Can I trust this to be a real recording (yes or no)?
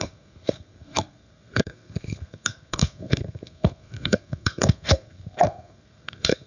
no